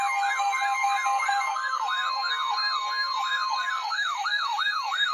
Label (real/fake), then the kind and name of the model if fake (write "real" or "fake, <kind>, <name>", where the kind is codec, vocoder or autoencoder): fake, codec, SNAC